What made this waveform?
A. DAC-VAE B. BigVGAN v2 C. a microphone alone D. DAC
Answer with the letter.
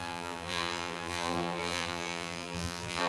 B